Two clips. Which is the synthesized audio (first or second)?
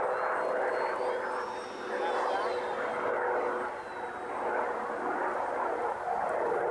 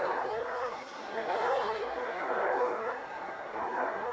second